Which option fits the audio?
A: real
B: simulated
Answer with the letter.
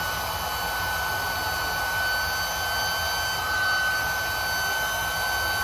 A